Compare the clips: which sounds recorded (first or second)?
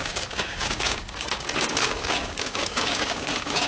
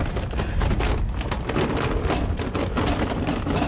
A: second